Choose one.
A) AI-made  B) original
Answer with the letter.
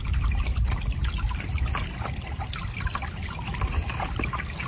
B